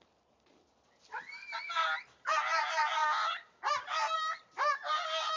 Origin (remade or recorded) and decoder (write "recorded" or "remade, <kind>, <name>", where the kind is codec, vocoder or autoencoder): recorded